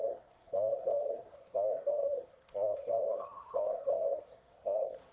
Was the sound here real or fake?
fake